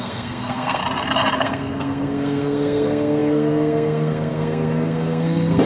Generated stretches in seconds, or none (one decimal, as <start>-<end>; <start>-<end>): 0.0-0.8; 1.4-5.7